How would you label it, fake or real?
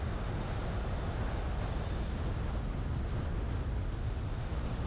real